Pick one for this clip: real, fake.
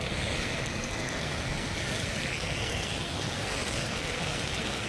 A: fake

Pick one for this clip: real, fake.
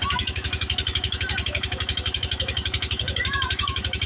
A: fake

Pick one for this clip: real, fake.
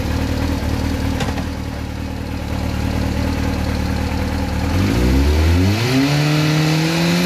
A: real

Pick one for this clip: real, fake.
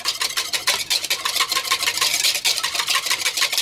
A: real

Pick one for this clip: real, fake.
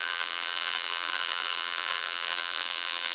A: fake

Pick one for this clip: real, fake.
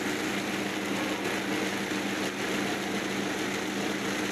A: real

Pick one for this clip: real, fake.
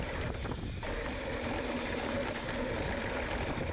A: real